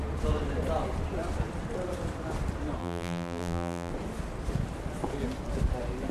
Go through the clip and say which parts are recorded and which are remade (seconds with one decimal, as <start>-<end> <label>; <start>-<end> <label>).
0.0-2.8 recorded; 2.8-3.9 remade; 3.9-6.1 recorded